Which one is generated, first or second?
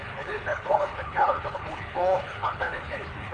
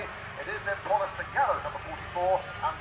first